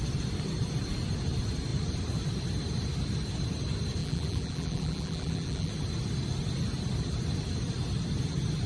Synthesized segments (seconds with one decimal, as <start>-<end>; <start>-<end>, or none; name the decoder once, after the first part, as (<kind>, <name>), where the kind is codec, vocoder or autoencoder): 4.0-5.7 (vocoder, BigVGAN v2)